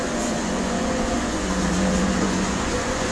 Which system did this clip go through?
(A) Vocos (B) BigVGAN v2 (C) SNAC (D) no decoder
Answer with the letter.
A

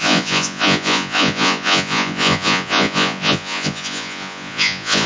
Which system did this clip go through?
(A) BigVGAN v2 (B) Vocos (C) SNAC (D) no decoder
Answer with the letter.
B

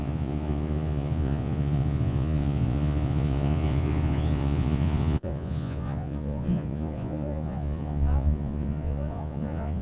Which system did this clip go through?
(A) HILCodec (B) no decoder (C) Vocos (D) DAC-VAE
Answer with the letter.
C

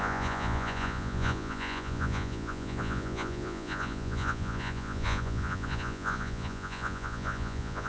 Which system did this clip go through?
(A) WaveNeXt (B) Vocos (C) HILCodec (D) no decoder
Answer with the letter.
B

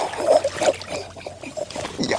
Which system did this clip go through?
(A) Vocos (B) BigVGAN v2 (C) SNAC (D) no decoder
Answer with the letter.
D